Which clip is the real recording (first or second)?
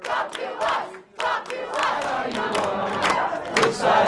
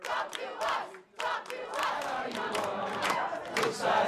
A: first